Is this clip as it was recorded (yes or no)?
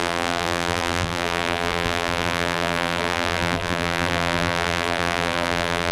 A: no